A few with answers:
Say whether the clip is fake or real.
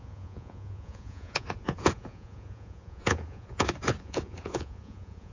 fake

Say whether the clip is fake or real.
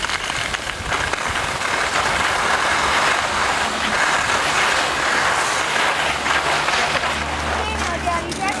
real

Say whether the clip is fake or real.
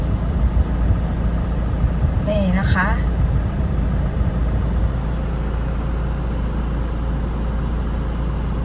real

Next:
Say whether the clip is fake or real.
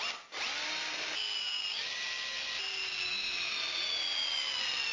real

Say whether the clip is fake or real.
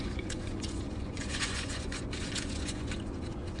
fake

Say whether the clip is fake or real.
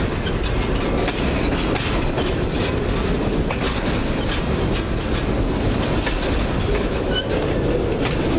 real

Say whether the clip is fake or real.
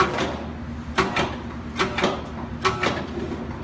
real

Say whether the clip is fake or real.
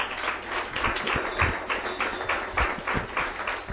real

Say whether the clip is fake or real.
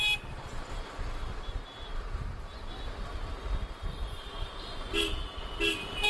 real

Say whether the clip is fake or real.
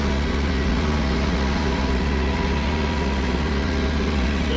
fake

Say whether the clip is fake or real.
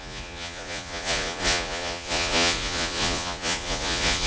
fake